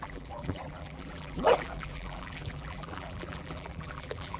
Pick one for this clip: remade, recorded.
remade